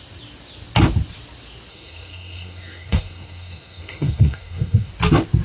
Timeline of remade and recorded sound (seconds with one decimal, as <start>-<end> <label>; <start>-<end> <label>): 0.0-1.7 recorded; 1.7-4.9 remade; 4.9-5.4 recorded